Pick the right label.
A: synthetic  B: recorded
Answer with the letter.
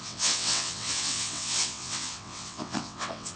A